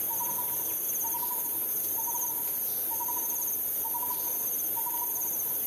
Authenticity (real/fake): real